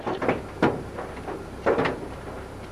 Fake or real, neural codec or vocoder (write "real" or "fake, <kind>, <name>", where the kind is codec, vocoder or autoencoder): real